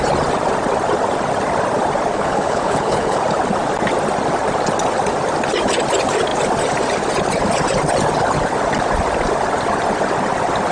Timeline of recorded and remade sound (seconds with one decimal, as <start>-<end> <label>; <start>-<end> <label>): 0.0-2.1 recorded; 2.1-3.2 remade; 3.2-10.7 recorded